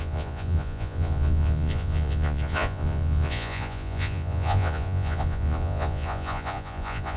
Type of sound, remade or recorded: remade